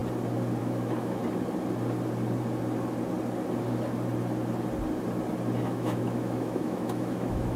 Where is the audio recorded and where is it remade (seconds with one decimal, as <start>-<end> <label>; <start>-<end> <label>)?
0.0-0.6 recorded; 0.6-1.2 remade; 1.2-5.6 recorded; 5.6-7.6 remade